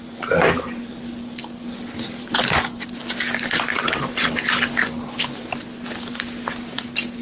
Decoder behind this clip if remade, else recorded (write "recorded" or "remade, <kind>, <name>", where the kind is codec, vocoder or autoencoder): recorded